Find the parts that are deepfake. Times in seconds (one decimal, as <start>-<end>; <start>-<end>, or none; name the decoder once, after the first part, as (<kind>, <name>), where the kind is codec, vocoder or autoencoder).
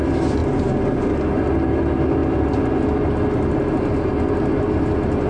none